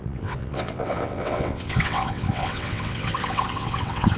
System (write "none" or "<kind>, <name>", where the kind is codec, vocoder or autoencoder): vocoder, WaveNeXt